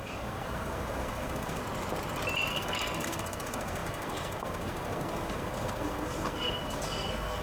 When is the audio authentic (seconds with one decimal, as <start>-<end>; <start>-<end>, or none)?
1.6-2.5